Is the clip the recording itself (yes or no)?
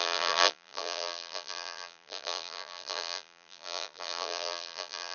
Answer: no